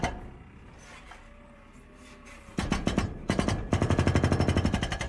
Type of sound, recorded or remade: recorded